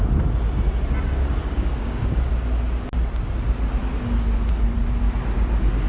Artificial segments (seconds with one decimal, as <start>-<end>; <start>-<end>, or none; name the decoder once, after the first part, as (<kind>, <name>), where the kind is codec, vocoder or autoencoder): 1.4-2.3 (codec, DAC)